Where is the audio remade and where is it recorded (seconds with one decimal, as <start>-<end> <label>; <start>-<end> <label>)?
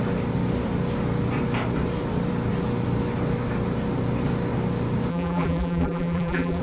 0.0-5.1 recorded; 5.1-6.6 remade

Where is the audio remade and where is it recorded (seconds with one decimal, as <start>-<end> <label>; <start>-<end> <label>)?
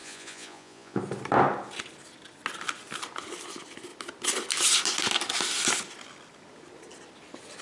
0.0-1.0 remade; 1.0-7.6 recorded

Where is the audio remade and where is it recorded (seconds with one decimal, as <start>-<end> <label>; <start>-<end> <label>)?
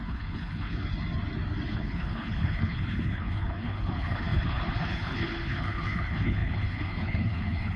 0.0-0.9 remade; 0.9-1.7 recorded; 1.7-7.8 remade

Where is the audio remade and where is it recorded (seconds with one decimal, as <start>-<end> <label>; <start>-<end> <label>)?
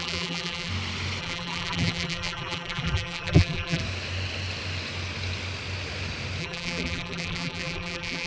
0.0-0.7 remade; 0.7-1.2 recorded; 1.2-3.8 remade; 3.8-6.4 recorded; 6.4-8.3 remade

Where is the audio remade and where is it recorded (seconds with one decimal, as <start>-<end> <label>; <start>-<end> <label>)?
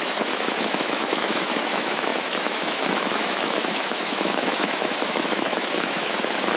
0.0-6.6 remade